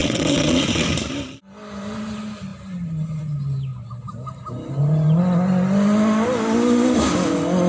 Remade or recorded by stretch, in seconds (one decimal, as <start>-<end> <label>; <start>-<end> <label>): 0.0-0.9 remade; 0.9-7.7 recorded